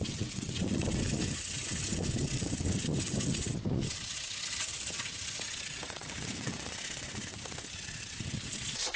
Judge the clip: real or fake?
fake